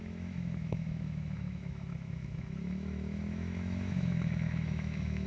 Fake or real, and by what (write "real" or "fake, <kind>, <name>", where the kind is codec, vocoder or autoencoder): fake, autoencoder, DAC-VAE